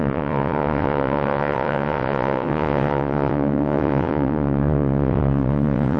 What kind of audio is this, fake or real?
fake